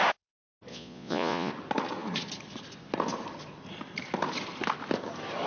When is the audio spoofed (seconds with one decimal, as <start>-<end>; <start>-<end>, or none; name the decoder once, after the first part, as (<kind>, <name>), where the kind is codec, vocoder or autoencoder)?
0.7-1.5 (vocoder, Vocos)